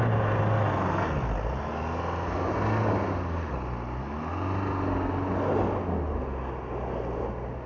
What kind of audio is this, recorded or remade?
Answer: recorded